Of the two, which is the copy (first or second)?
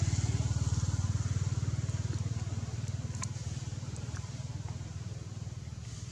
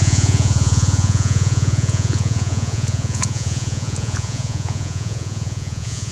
second